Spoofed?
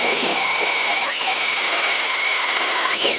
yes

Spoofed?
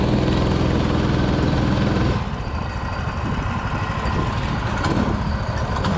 no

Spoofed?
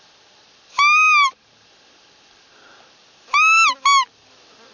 no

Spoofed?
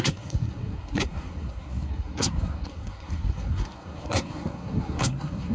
yes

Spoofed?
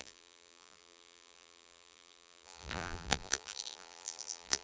yes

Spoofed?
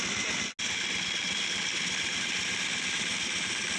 no